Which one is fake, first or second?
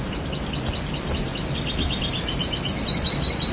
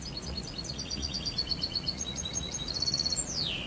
second